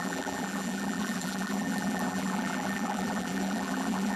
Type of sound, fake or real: fake